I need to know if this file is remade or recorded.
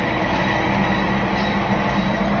recorded